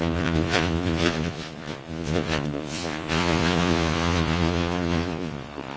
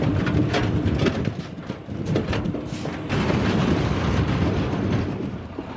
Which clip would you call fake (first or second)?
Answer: first